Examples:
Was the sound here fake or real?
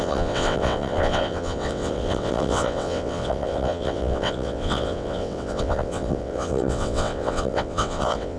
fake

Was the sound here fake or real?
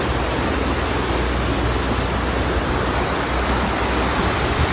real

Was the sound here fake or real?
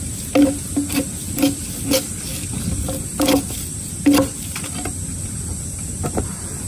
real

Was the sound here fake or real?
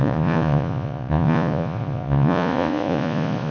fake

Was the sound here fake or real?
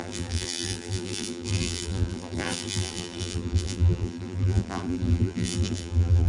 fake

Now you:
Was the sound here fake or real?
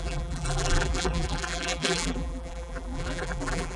fake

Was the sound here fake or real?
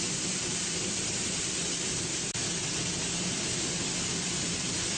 real